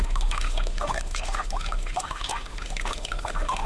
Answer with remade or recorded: remade